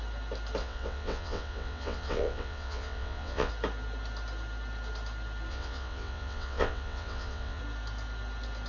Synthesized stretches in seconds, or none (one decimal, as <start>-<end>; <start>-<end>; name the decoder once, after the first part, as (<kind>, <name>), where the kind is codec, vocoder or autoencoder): 0.6-3.5 (vocoder, WaveNeXt); 5.5-7.6

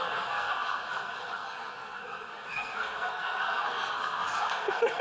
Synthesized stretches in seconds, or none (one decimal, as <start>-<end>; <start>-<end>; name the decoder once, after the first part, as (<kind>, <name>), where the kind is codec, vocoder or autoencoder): 0.0-5.0 (codec, SNAC)

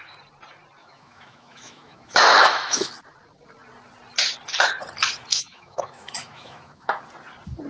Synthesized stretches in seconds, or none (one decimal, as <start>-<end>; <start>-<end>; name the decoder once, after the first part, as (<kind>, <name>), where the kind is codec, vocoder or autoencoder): 0.8-2.9 (autoencoder, DAC-VAE); 5.3-7.0

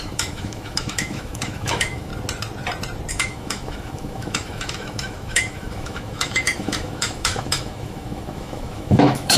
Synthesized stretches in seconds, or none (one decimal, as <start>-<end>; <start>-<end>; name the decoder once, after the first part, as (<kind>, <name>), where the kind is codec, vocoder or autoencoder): 0.0-2.1 (autoencoder, DAC-VAE); 3.1-9.4

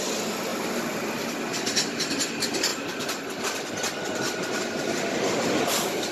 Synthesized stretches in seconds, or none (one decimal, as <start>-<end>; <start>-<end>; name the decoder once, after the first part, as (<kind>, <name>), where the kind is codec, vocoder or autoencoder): none